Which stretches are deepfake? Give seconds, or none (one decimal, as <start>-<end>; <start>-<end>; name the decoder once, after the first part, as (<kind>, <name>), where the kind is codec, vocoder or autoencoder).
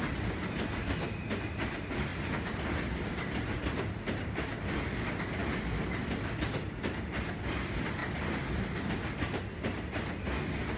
none